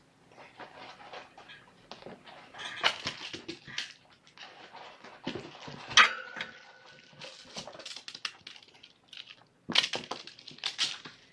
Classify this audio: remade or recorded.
recorded